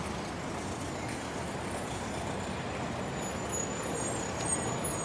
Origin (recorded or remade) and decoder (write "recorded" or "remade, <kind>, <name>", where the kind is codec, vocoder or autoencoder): recorded